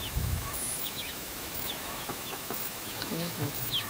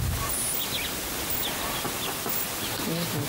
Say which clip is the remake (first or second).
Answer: first